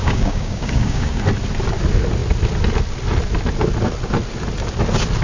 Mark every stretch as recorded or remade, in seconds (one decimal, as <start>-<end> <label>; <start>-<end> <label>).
0.0-1.2 remade; 1.2-5.2 recorded

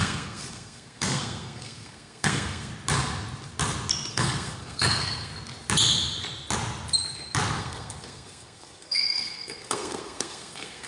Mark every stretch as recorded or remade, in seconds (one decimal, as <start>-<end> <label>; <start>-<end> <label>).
0.0-2.7 remade; 2.7-4.1 recorded; 4.1-5.3 remade; 5.3-7.6 recorded; 7.6-10.9 remade

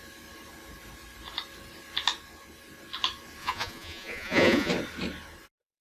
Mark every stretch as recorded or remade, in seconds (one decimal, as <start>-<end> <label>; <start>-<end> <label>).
0.0-3.4 recorded; 3.4-4.7 remade; 4.7-5.8 recorded